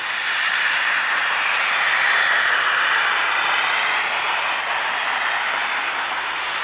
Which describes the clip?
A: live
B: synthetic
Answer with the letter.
A